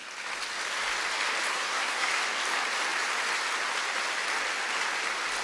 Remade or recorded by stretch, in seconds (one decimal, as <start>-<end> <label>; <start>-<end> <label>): 0.0-1.5 recorded; 1.5-2.2 remade; 2.2-5.4 recorded